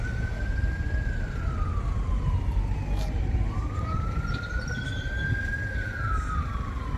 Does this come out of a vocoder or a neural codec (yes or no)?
no